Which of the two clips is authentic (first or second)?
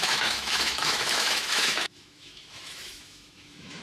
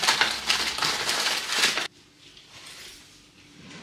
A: second